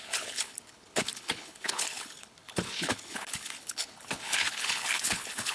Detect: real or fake fake